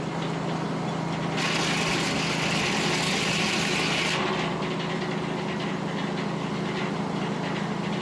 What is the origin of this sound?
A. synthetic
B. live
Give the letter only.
B